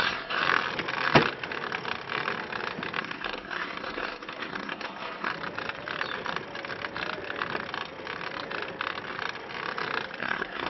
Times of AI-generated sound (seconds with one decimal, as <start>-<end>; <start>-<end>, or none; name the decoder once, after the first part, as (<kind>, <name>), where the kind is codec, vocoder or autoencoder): 0.0-0.4 (codec, SNAC); 3.0-5.3; 10.2-10.7